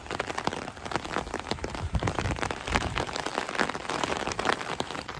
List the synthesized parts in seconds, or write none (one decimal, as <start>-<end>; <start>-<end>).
1.5-3.3; 3.9-5.2